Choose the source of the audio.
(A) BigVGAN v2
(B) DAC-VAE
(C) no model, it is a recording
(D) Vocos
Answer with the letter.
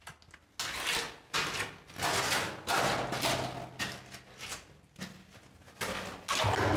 C